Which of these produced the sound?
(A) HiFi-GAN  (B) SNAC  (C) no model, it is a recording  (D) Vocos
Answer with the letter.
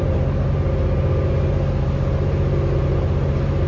C